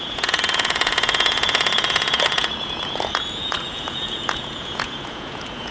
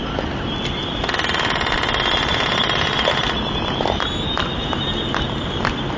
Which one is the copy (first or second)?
first